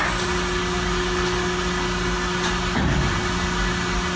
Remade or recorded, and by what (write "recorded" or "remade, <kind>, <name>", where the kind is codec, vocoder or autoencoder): recorded